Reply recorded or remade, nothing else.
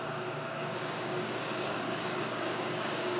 remade